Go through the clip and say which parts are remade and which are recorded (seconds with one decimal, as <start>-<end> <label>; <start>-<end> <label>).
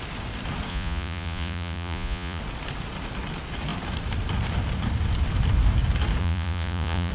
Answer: 0.0-0.7 recorded; 0.7-2.4 remade; 2.4-6.2 recorded; 6.2-7.1 remade